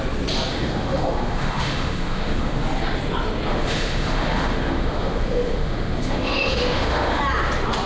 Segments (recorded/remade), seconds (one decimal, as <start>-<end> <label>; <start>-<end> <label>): 0.0-0.5 recorded; 0.5-2.6 remade; 2.6-3.5 recorded; 3.5-7.2 remade; 7.2-7.9 recorded